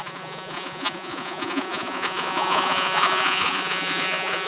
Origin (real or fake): fake